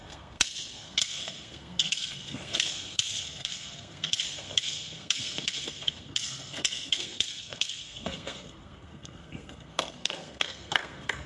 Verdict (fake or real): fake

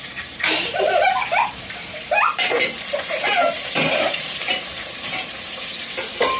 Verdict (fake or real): fake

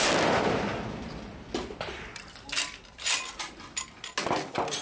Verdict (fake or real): real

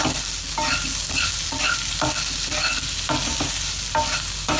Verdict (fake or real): real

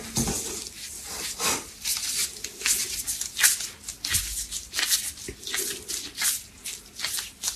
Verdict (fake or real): real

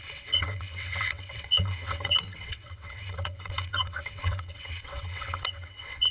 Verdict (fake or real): fake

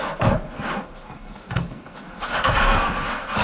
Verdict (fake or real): fake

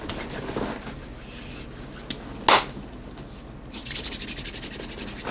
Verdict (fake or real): real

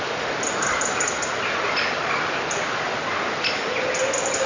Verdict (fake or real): real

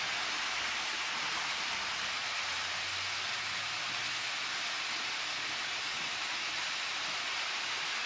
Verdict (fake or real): real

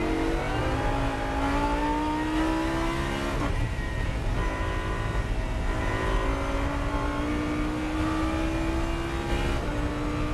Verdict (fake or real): real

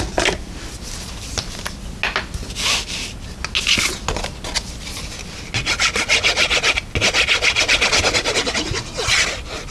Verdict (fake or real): real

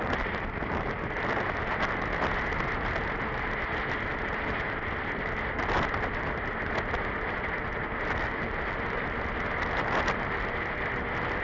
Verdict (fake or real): real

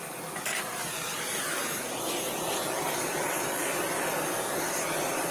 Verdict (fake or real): real